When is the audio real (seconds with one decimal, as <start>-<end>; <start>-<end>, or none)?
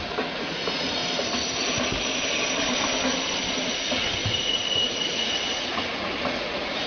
1.0-3.5